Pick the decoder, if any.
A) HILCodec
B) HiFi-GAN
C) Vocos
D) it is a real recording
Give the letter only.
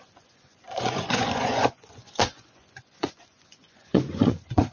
C